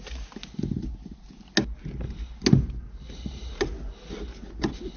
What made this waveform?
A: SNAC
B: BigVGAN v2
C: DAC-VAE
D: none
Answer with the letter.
D